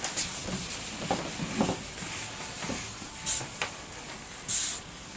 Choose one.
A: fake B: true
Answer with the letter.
B